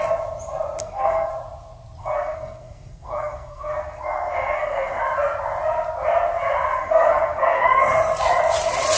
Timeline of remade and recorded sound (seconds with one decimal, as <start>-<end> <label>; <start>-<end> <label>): 0.0-0.8 recorded; 0.8-1.3 remade; 1.3-2.0 recorded; 2.0-5.0 remade; 5.0-6.7 recorded; 6.7-7.8 remade; 7.8-9.0 recorded